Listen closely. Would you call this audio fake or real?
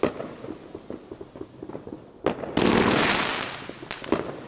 real